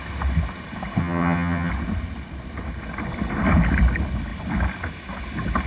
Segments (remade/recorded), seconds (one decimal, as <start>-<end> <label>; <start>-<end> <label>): 0.0-1.0 recorded; 1.0-1.7 remade; 1.7-5.7 recorded